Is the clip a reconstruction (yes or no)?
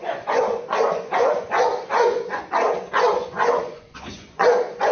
yes